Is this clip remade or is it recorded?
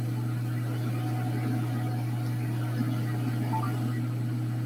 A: recorded